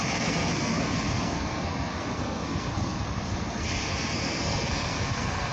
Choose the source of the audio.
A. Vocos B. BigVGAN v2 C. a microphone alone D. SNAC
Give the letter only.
D